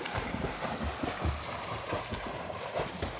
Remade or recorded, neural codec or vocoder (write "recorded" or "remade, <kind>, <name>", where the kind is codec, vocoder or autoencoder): remade, vocoder, BigVGAN v2